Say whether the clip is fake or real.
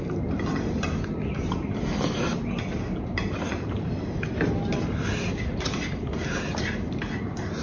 fake